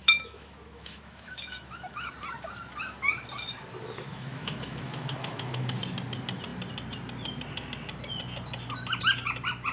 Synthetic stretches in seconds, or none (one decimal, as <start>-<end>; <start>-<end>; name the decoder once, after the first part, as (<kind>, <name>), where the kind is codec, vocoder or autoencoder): 0.0-2.1 (autoencoder, DAC-VAE); 4.1-5.8